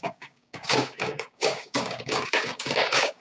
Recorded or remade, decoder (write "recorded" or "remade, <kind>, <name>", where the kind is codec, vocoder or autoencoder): remade, codec, DAC